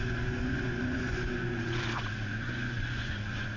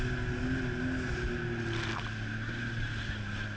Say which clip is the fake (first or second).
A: first